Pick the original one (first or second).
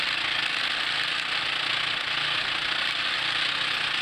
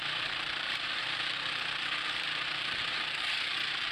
first